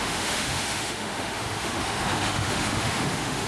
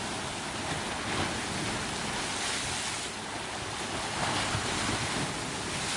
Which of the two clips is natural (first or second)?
second